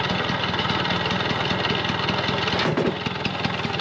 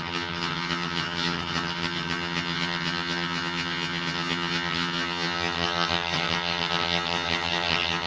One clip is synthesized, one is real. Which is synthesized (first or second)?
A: second